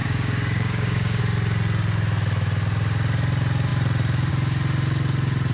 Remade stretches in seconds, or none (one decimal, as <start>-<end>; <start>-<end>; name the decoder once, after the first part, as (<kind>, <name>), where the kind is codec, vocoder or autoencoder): 0.0-1.2 (codec, DAC)